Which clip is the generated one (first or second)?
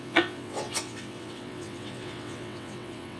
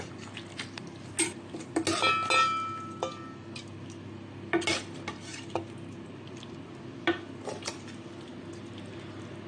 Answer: first